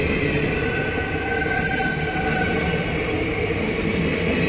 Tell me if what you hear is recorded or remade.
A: recorded